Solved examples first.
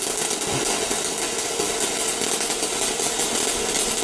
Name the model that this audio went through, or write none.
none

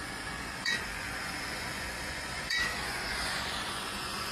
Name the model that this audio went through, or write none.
vocoder, Vocos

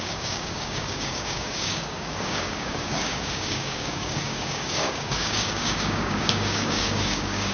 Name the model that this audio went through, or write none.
codec, DAC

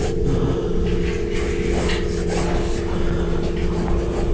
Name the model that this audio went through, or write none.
none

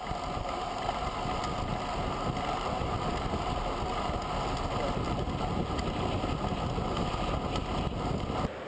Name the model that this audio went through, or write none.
none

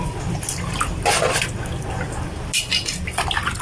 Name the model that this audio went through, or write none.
none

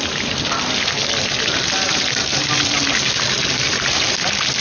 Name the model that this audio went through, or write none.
none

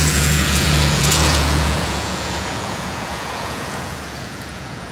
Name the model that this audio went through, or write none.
vocoder, Vocos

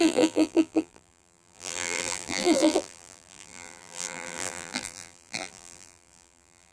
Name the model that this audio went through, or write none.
vocoder, BigVGAN v2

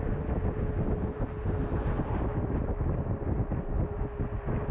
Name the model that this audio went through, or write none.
none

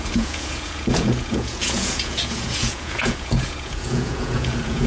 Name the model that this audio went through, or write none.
vocoder, Vocos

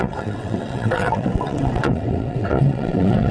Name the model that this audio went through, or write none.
vocoder, WaveNeXt